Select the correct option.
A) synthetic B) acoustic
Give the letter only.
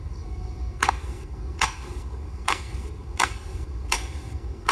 A